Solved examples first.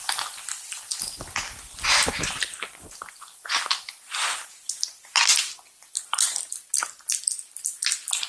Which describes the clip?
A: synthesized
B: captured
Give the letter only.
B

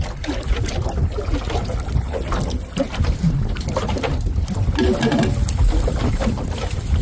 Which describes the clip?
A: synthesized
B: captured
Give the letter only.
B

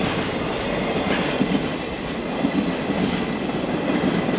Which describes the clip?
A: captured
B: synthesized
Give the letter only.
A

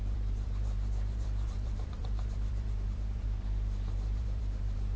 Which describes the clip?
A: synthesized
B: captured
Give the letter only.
A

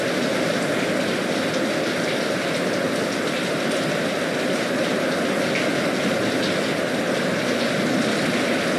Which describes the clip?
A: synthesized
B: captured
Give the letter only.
B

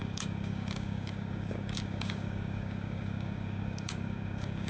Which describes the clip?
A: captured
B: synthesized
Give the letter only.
B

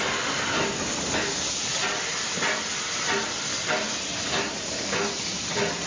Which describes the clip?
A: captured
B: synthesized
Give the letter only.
A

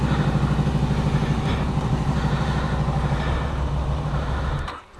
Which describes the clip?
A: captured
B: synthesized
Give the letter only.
B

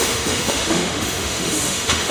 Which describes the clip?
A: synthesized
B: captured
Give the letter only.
A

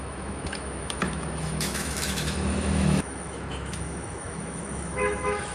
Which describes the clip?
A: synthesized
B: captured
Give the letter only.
A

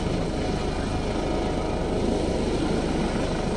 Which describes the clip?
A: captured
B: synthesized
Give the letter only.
A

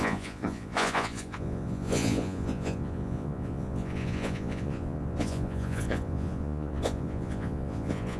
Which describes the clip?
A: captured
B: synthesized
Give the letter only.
B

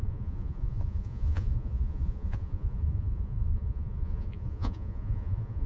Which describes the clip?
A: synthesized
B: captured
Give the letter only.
A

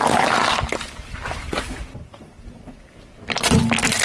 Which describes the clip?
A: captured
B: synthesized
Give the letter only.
A